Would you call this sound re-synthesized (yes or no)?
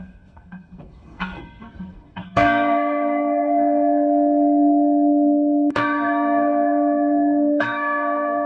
yes